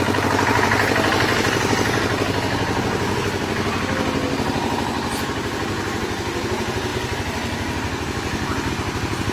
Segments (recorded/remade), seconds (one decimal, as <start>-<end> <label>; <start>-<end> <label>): 0.0-9.3 recorded